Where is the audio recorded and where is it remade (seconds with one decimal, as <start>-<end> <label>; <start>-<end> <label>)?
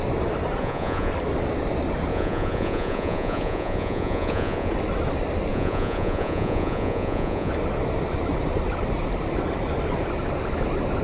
0.0-0.6 recorded; 0.6-1.1 remade; 1.1-2.1 recorded; 2.1-4.7 remade; 4.7-5.5 recorded; 5.5-7.5 remade; 7.5-11.0 recorded